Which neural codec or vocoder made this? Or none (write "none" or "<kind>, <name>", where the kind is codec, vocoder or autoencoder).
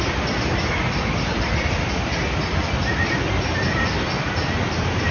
none